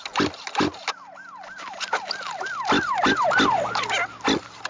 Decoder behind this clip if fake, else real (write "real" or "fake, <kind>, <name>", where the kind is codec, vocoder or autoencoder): real